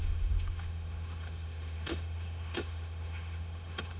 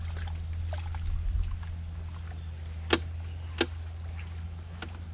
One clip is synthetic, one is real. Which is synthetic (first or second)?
first